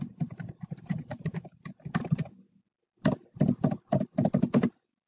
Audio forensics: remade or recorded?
recorded